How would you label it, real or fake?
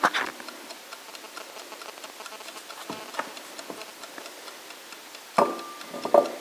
real